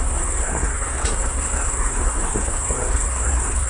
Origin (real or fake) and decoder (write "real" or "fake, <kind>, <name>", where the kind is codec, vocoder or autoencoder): fake, codec, SNAC